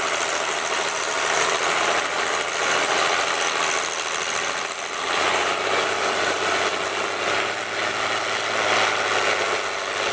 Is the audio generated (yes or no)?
no